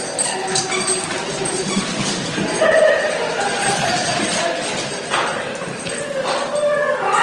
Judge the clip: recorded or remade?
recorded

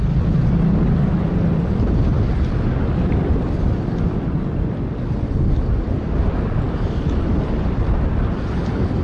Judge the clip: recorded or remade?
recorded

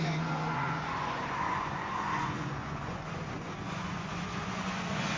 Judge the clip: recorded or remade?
remade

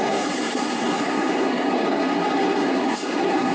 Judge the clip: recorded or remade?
remade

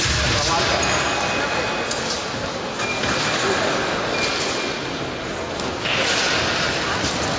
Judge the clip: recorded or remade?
recorded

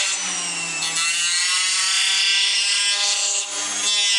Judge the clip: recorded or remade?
recorded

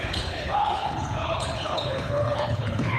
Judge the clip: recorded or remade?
remade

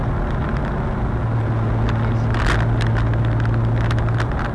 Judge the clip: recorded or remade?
recorded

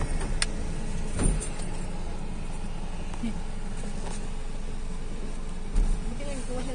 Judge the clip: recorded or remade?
recorded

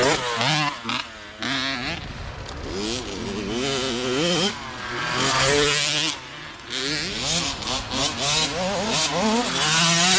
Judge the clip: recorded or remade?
recorded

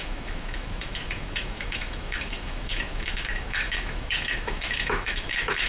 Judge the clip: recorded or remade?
remade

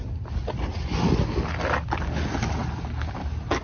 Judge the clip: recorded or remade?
recorded